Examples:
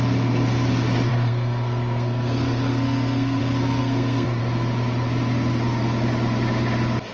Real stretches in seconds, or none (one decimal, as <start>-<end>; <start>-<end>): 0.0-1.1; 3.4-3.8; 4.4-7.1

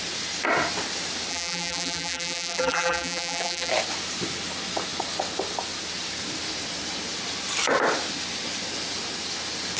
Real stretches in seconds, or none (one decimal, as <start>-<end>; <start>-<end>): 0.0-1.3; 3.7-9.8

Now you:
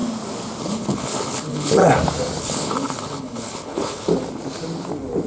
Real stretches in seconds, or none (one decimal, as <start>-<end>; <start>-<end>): 0.0-0.6; 1.8-2.4; 4.1-5.3